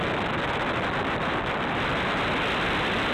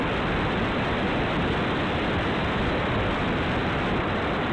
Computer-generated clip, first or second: second